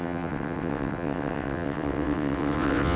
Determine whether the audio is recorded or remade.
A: remade